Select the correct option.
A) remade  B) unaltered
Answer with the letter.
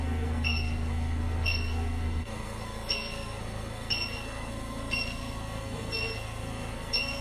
A